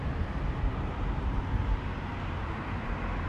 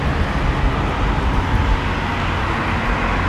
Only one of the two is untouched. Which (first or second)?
second